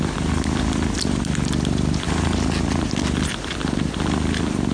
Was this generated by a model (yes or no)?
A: no